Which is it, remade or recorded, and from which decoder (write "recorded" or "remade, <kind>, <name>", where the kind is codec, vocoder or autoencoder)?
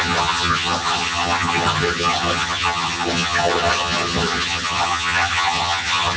remade, vocoder, HiFi-GAN